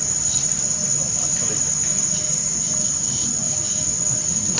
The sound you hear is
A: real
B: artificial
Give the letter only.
A